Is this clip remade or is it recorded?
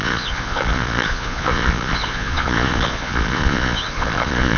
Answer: remade